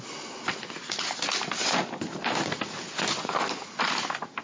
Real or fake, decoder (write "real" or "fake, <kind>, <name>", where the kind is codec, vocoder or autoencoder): real